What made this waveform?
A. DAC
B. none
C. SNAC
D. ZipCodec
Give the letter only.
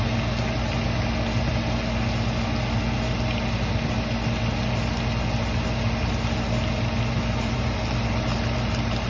B